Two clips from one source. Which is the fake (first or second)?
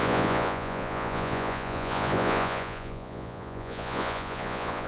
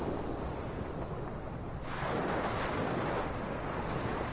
first